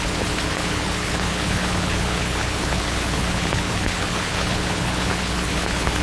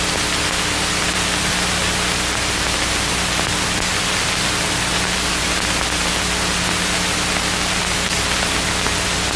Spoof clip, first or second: first